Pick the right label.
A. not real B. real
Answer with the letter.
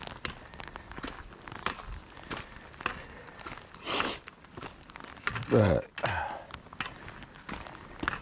B